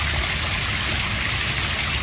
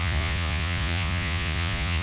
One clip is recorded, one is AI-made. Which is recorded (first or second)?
first